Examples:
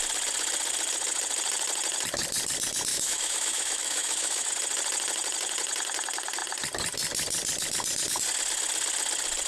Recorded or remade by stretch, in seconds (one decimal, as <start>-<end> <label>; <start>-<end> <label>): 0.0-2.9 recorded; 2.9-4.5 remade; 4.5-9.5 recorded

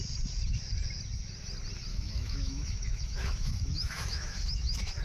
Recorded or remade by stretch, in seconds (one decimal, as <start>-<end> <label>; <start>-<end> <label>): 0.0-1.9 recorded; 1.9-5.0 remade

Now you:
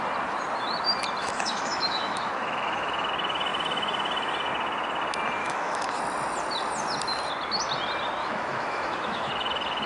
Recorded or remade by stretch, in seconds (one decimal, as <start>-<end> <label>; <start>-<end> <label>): 0.0-1.2 recorded; 1.2-3.1 remade; 3.1-5.4 recorded; 5.4-6.0 remade; 6.0-8.2 recorded; 8.2-9.3 remade; 9.3-9.9 recorded

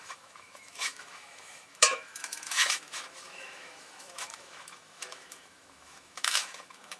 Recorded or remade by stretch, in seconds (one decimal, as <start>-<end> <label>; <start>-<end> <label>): 0.0-7.0 remade

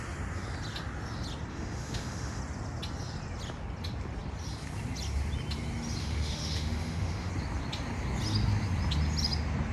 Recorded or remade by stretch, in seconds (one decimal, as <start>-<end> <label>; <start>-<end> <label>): 0.0-1.5 recorded; 1.5-2.4 remade; 2.4-6.0 recorded; 6.0-7.3 remade; 7.3-9.7 recorded